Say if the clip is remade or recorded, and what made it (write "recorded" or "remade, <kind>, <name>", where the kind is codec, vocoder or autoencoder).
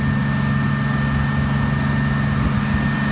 recorded